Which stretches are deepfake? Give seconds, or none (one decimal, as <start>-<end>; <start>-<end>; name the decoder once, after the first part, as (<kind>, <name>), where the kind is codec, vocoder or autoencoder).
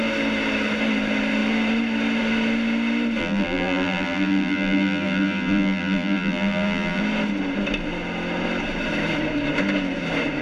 3.2-7.0 (vocoder, BigVGAN v2)